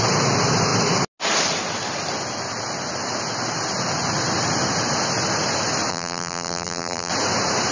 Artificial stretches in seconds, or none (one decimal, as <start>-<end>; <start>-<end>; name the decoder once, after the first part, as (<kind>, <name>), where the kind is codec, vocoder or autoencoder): 5.9-7.1 (vocoder, BigVGAN v2)